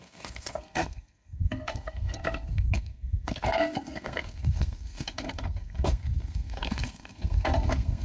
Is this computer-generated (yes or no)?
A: yes